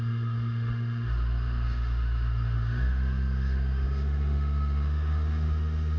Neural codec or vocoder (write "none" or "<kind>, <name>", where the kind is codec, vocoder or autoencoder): autoencoder, DAC-VAE